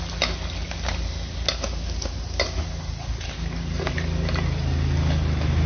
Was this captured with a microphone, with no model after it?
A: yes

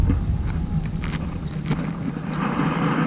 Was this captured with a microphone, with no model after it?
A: yes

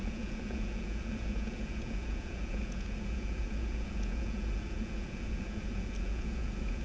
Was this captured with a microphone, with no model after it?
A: no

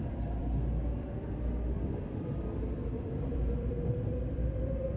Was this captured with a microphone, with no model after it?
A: no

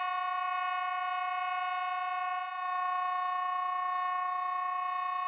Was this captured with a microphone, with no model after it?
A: yes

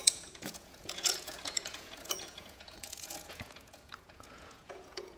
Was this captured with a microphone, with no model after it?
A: no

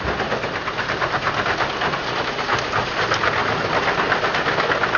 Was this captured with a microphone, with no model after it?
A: yes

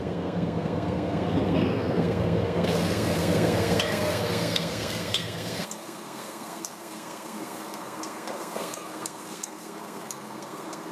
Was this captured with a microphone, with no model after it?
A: no